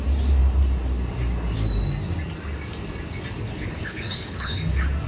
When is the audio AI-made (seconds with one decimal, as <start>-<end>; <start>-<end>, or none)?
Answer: 3.4-4.6